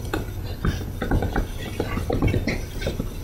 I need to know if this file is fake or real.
real